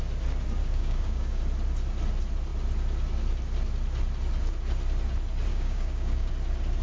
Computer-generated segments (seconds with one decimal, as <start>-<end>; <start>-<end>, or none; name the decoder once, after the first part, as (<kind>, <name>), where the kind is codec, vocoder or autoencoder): 0.6-1.4 (codec, DAC); 5.5-6.3